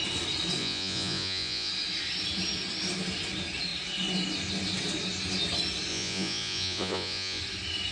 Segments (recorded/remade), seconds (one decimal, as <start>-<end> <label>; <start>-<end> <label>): 0.0-0.6 recorded; 0.6-1.7 remade; 1.7-5.9 recorded; 5.9-7.4 remade; 7.4-7.9 recorded